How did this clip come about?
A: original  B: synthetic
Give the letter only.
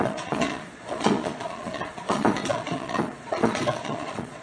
B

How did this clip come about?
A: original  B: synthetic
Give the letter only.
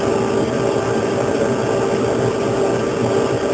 A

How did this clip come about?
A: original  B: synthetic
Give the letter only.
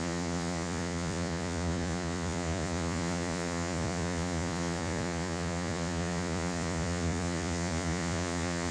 B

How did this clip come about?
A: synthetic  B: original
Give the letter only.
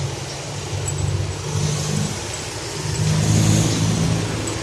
B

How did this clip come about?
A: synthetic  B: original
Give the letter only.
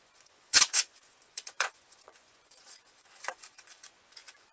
A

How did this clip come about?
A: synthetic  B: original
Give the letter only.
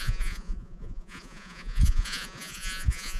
A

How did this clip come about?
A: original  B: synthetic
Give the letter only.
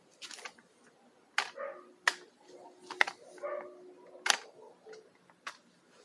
A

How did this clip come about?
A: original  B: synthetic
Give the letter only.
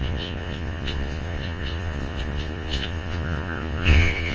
B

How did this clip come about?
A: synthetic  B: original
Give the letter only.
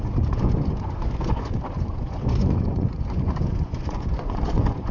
A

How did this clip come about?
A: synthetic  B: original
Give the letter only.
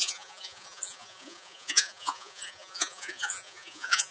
A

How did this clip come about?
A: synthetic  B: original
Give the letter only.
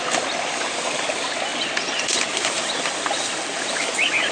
B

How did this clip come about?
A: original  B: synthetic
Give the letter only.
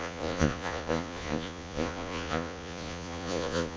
B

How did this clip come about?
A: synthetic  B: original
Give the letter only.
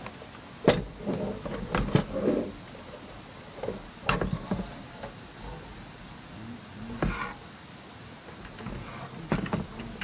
B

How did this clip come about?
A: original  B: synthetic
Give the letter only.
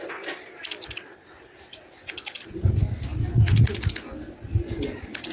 A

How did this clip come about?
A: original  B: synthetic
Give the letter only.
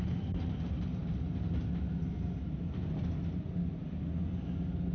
A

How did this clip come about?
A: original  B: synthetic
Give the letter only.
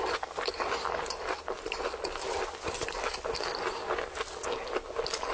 A